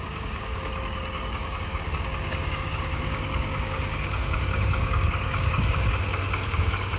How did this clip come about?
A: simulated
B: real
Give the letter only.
A